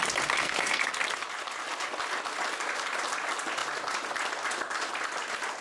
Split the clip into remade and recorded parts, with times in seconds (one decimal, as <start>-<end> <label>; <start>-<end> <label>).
0.0-0.4 recorded; 0.4-0.9 remade; 0.9-5.6 recorded